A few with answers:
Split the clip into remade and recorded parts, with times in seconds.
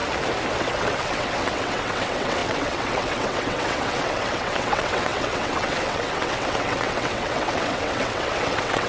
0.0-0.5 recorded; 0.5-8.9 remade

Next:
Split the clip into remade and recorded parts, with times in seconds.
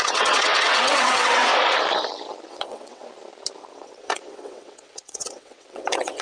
0.0-1.5 remade; 1.5-2.5 recorded; 2.5-3.0 remade; 3.0-3.7 recorded; 3.7-6.2 remade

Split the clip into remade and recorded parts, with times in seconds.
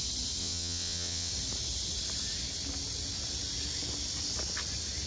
0.0-0.4 recorded; 0.4-1.3 remade; 1.3-5.1 recorded